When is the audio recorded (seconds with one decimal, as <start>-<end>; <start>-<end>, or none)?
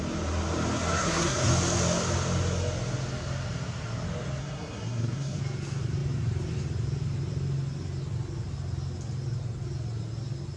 0.0-0.9; 1.5-4.4; 5.4-10.6